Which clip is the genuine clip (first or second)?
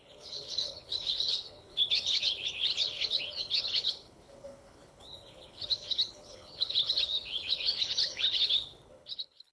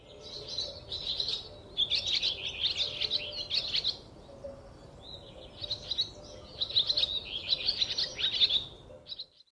second